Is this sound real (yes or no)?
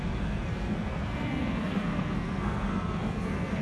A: no